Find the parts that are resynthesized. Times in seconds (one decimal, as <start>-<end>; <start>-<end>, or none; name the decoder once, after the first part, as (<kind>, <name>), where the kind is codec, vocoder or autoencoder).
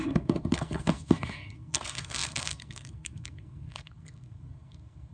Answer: 0.0-5.1 (codec, SNAC)